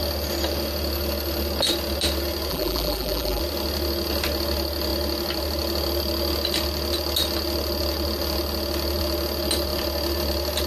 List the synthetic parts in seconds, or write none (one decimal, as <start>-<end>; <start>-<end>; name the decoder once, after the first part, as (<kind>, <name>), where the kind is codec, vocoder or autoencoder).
2.5-3.4 (vocoder, BigVGAN v2)